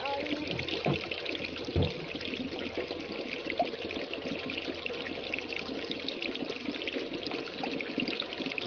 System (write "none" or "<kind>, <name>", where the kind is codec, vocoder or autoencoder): none